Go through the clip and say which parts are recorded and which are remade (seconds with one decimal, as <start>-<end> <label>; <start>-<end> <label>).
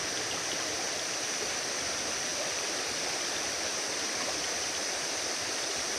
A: 0.0-6.0 recorded